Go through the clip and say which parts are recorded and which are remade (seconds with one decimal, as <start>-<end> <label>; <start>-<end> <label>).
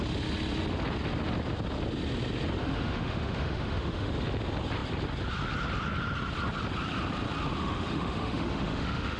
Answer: 0.0-2.6 recorded; 2.6-4.1 remade; 4.1-7.6 recorded; 7.6-9.2 remade